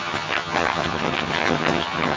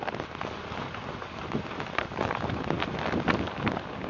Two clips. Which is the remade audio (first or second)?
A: first